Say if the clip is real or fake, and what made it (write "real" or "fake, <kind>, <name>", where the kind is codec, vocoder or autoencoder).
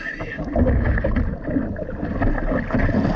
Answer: real